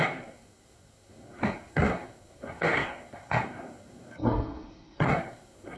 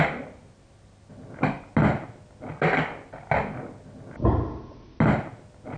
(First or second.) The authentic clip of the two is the second